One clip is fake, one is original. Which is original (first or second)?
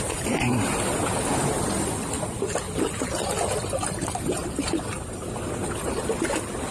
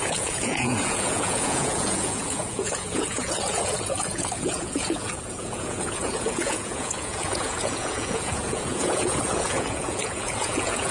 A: first